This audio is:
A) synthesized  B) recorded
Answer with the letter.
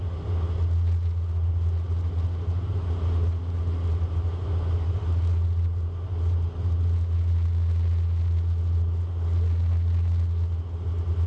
B